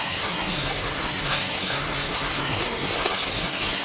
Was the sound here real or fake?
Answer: fake